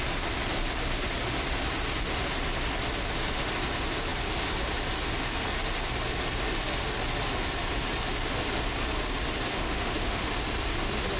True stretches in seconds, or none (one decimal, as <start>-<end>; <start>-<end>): 0.0-9.5; 10.3-11.2